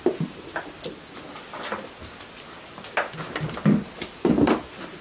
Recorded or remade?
recorded